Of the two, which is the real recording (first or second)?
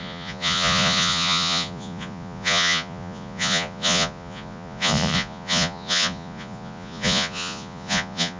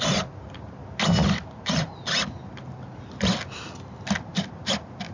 second